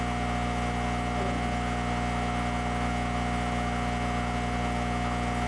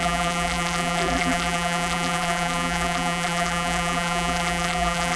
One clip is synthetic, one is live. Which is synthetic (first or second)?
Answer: second